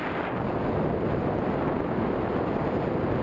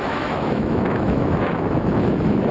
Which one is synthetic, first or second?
second